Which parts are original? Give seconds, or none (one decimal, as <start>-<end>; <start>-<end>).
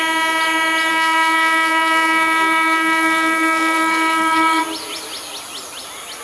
0.0-0.9; 4.6-6.2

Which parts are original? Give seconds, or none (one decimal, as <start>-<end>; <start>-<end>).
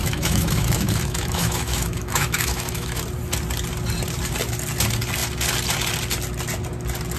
3.0-7.2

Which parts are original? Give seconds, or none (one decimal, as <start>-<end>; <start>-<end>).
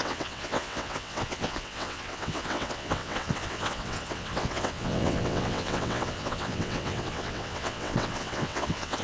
none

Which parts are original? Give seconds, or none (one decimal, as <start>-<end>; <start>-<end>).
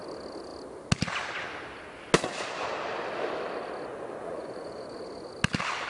0.0-3.9; 5.3-5.9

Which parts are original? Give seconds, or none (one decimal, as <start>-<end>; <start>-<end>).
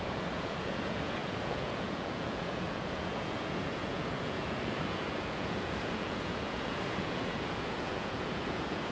none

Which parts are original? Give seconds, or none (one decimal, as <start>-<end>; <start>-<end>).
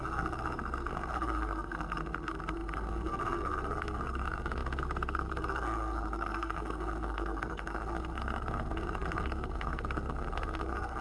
none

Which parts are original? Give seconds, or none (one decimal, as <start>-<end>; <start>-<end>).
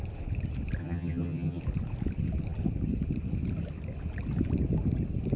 0.0-0.8; 1.6-5.4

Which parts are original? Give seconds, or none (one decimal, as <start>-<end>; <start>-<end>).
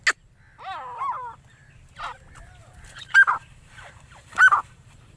0.0-2.6